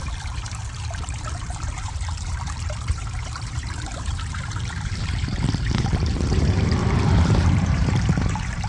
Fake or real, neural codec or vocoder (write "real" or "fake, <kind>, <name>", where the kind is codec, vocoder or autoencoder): fake, vocoder, BigVGAN v2